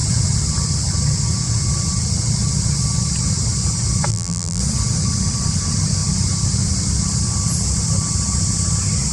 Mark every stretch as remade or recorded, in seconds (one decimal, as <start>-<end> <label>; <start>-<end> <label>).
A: 0.0-4.1 recorded; 4.1-4.6 remade; 4.6-9.1 recorded